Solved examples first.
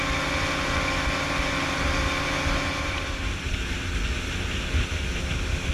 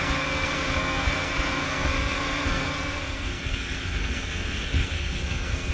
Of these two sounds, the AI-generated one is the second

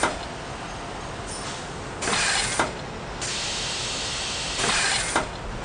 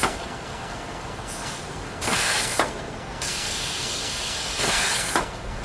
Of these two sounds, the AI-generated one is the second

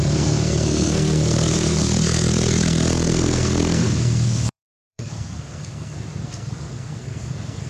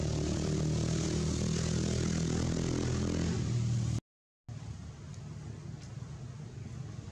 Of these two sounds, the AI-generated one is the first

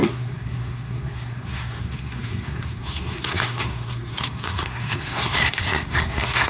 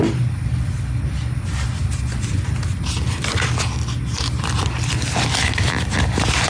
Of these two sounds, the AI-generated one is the first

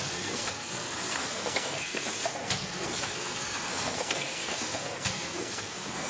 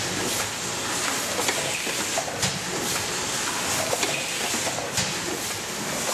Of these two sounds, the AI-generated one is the first